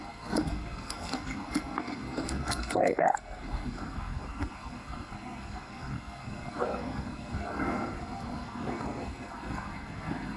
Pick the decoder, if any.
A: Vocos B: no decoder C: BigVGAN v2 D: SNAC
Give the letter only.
D